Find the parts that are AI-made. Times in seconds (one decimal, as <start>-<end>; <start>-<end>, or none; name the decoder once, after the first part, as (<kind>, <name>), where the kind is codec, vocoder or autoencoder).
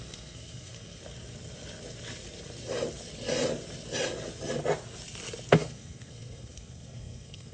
0.0-1.0 (codec, SNAC); 5.5-7.5